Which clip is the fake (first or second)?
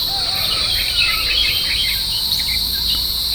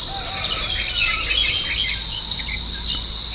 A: first